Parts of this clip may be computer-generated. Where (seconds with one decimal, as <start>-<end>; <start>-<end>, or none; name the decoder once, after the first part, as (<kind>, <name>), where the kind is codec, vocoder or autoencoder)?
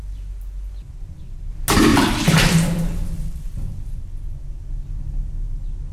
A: 1.9-4.7 (vocoder, BigVGAN v2)